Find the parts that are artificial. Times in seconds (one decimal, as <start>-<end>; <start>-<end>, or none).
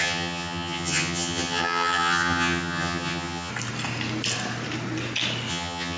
0.0-3.5; 5.5-6.0